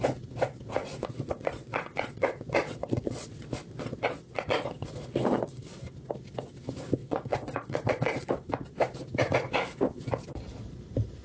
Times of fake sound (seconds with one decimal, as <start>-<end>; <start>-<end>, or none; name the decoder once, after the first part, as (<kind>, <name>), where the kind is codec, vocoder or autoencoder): 0.8-5.6 (vocoder, Vocos); 7.0-8.3

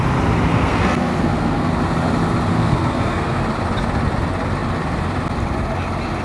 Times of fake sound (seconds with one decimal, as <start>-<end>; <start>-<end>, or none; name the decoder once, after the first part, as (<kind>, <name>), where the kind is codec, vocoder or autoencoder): 0.5-1.7 (codec, SNAC); 2.5-3.4

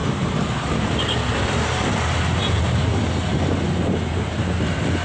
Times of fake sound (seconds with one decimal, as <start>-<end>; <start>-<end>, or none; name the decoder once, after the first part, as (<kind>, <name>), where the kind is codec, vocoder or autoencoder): 0.0-2.8 (vocoder, BigVGAN v2); 3.3-4.4